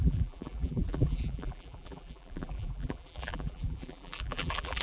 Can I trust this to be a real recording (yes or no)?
no